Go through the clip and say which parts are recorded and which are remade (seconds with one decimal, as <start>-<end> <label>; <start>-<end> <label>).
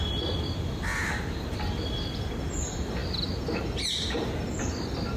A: 0.0-5.2 recorded